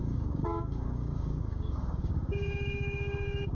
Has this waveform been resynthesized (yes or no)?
yes